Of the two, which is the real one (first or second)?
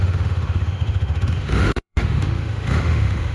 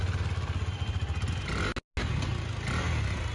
second